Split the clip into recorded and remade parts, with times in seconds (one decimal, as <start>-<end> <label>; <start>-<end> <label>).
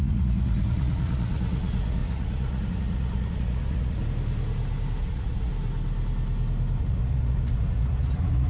0.0-4.0 remade; 4.0-5.0 recorded; 5.0-5.5 remade; 5.5-6.8 recorded; 6.8-8.5 remade